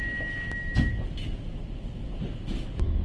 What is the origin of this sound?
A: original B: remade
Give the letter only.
A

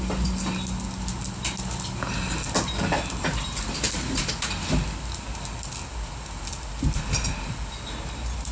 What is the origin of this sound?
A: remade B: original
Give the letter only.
B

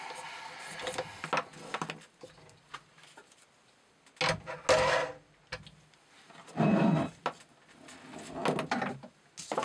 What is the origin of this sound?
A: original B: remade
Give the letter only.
A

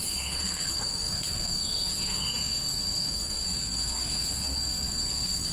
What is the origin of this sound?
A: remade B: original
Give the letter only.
A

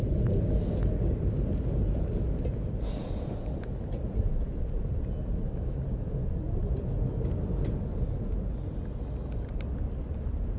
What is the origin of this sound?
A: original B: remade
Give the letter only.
A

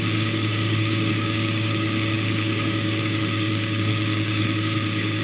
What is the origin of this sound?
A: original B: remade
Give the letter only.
B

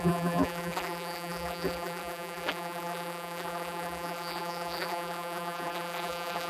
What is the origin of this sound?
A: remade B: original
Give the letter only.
A